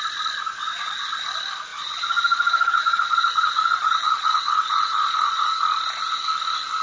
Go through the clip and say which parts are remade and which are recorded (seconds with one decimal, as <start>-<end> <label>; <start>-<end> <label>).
0.0-1.7 recorded; 1.7-5.5 remade; 5.5-6.8 recorded